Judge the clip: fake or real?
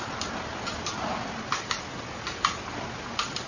real